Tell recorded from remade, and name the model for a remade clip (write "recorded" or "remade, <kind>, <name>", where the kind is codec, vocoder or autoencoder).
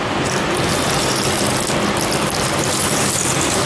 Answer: recorded